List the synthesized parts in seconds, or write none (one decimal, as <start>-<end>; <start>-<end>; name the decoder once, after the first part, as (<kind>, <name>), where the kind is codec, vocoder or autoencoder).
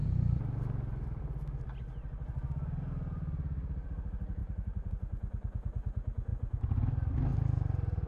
0.0-1.2 (vocoder, BigVGAN v2); 4.4-4.9